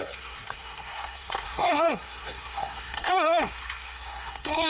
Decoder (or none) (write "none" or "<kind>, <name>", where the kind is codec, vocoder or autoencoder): codec, SNAC